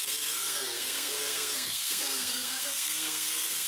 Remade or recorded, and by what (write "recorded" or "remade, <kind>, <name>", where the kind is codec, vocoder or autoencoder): remade, codec, SNAC